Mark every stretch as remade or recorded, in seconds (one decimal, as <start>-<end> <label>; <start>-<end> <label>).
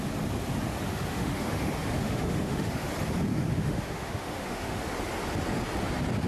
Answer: 0.0-0.9 recorded; 0.9-2.9 remade; 2.9-3.3 recorded; 3.3-4.8 remade; 4.8-6.3 recorded